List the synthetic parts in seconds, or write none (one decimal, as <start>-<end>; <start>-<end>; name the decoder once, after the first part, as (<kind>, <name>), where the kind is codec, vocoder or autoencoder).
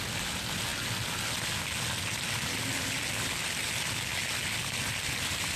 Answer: none